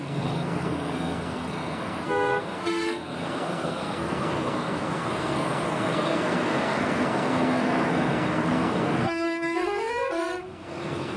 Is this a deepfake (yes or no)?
yes